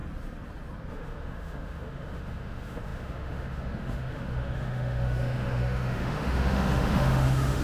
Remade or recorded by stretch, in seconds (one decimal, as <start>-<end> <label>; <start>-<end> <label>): 0.0-0.9 recorded; 0.9-7.6 remade